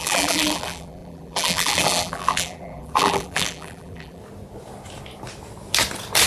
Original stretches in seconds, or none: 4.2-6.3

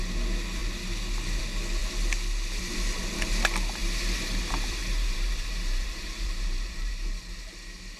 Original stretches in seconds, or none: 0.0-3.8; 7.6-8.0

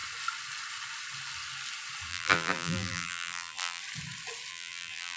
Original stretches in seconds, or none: 0.0-2.1; 3.8-4.5

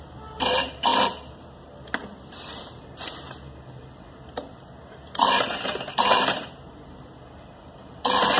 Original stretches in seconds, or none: 0.9-5.9; 7.8-8.4

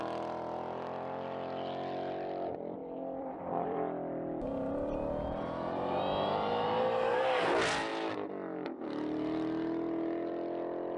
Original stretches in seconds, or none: 0.0-2.8; 6.0-11.0